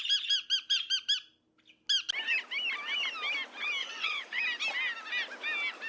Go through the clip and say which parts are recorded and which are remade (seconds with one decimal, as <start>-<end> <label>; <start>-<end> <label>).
0.0-3.8 recorded; 3.8-4.4 remade; 4.4-5.9 recorded